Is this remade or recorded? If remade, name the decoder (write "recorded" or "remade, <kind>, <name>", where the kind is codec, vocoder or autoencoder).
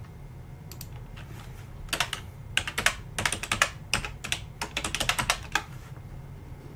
recorded